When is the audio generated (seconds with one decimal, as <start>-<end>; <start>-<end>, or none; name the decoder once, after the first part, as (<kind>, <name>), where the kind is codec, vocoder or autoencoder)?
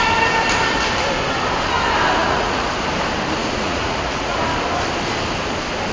2.2-2.7 (vocoder, Vocos); 3.4-4.4